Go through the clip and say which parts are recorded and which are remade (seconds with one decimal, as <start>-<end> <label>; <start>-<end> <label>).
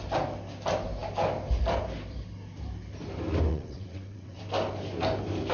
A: 0.0-3.5 recorded; 3.5-4.4 remade; 4.4-5.5 recorded